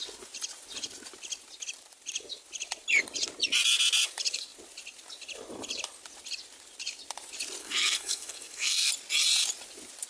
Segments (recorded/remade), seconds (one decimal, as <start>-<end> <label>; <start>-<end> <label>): 0.0-7.6 recorded; 7.6-8.9 remade; 8.9-10.1 recorded